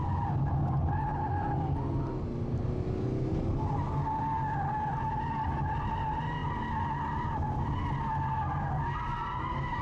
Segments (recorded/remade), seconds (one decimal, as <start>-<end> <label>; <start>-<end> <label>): 0.0-9.8 recorded